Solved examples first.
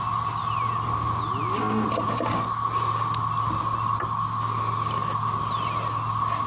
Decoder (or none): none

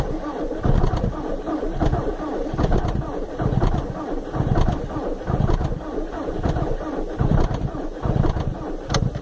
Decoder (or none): vocoder, BigVGAN v2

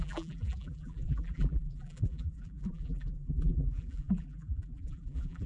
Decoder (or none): vocoder, BigVGAN v2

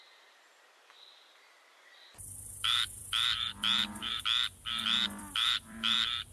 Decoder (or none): vocoder, BigVGAN v2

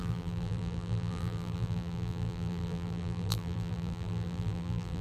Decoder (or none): vocoder, BigVGAN v2